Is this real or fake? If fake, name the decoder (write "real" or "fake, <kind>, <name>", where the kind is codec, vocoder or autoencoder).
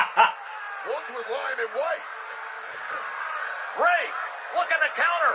real